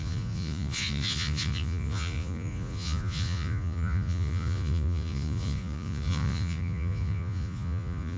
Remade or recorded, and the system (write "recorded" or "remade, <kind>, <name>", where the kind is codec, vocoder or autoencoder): remade, vocoder, Vocos